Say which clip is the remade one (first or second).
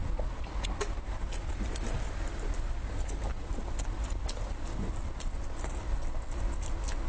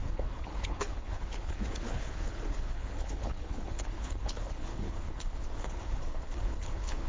second